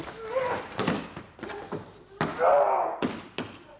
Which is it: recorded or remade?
recorded